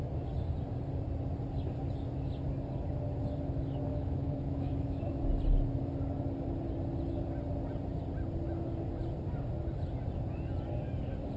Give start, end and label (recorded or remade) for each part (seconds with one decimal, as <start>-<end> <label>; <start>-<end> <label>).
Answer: 0.0-3.9 recorded; 3.9-5.2 remade; 5.2-11.4 recorded